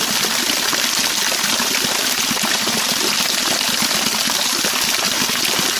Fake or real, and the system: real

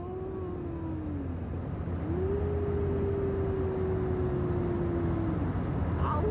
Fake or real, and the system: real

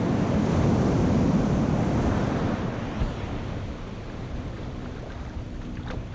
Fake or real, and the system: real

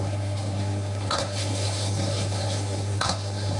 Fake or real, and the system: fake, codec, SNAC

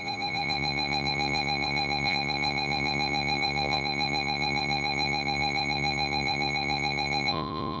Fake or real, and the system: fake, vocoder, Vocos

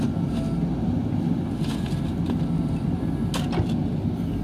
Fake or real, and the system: real